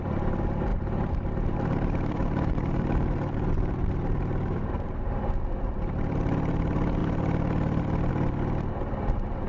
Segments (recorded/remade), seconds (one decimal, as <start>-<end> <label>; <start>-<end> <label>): 0.0-0.7 recorded; 0.7-5.2 remade; 5.2-9.5 recorded